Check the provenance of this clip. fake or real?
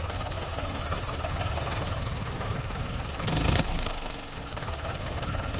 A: fake